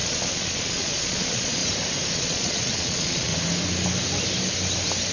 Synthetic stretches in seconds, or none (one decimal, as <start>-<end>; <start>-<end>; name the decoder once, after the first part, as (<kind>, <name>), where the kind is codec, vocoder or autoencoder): 0.0-1.6 (vocoder, Vocos); 2.1-3.3